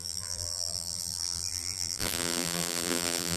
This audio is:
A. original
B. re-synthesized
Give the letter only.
B